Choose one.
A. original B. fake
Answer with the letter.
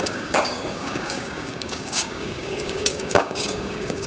B